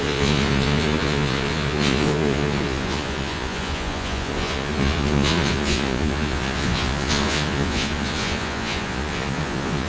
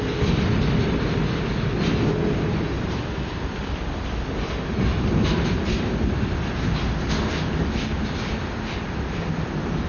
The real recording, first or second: second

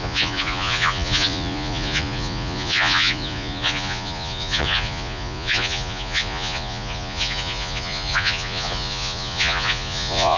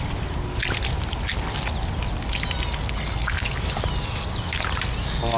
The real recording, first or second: second